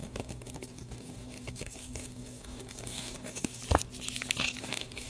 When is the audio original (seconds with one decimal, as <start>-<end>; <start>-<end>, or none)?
3.6-4.6